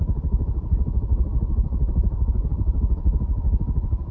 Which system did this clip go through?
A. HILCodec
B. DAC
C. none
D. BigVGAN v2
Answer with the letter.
C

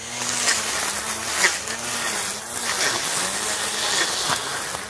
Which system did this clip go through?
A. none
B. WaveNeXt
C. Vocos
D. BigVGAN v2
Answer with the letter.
A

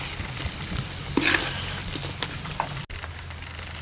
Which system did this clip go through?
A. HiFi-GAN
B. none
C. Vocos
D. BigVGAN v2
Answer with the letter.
B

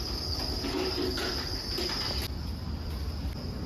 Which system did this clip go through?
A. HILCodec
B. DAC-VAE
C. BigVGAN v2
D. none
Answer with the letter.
D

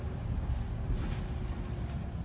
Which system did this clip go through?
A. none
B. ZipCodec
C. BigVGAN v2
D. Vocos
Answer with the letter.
A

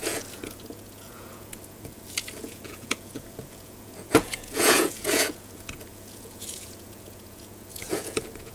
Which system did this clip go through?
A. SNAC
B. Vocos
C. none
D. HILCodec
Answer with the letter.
B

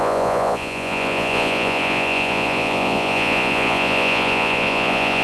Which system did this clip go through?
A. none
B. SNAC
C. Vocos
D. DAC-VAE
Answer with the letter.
C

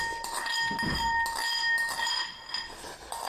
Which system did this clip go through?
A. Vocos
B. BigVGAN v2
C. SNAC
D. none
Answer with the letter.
D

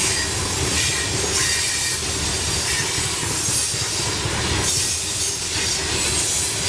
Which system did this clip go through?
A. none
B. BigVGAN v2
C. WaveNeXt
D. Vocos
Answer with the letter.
A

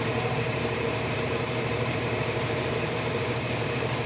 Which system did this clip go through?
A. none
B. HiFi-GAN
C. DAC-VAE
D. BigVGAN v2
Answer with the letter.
D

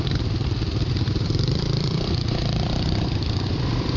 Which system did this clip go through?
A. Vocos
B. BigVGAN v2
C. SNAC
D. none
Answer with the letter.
B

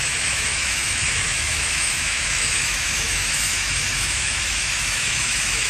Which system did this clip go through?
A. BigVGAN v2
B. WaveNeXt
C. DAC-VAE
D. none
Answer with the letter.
C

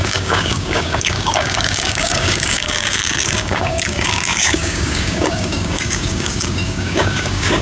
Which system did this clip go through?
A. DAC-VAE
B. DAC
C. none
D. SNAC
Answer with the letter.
B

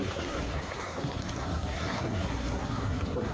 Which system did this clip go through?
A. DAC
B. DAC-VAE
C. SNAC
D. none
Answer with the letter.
C